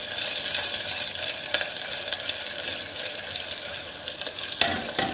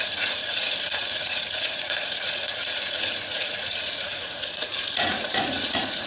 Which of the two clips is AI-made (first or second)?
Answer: second